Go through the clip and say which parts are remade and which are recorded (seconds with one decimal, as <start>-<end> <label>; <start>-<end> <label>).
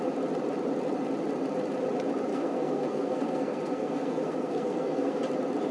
0.0-2.3 recorded; 2.3-5.2 remade; 5.2-5.7 recorded